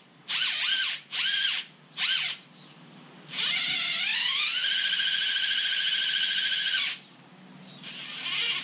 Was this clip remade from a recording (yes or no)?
no